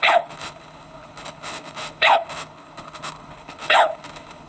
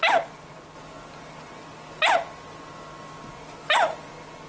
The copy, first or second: first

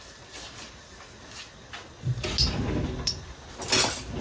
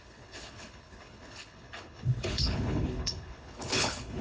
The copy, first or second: second